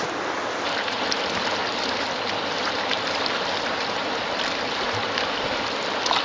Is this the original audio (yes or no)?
yes